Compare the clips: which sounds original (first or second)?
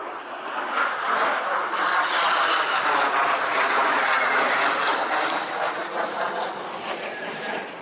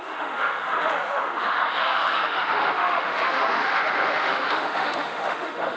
first